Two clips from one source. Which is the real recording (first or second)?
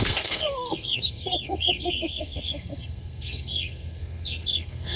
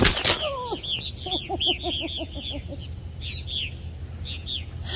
second